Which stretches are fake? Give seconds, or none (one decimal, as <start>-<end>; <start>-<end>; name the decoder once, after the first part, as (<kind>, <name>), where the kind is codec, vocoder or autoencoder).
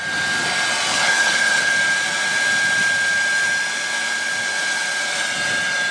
0.9-1.7 (codec, HILCodec)